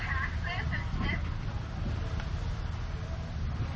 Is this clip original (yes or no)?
yes